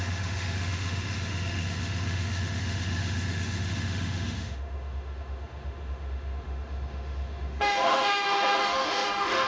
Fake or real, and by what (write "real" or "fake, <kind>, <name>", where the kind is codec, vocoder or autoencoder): fake, autoencoder, DAC-VAE